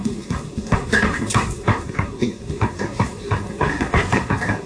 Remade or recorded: remade